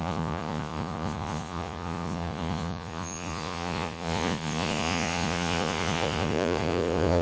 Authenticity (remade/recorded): remade